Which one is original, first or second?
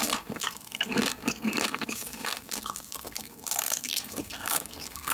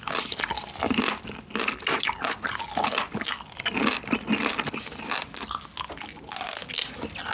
second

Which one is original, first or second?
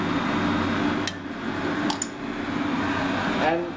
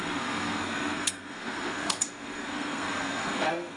first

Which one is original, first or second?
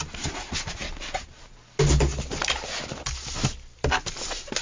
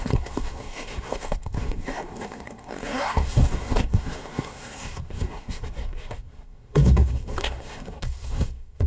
first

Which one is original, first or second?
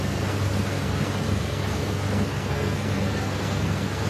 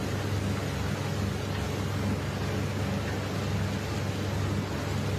second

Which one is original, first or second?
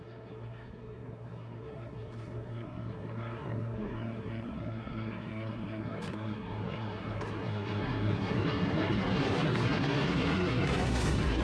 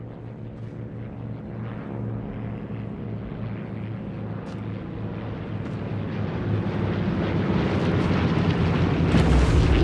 second